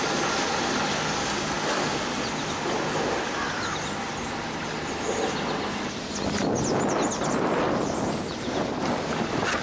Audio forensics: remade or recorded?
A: recorded